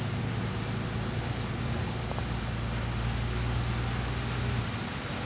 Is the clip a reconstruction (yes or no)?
no